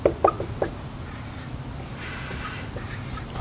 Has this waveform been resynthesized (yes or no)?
no